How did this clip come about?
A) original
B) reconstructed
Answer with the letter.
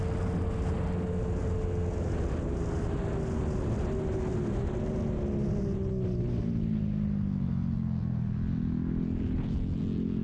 A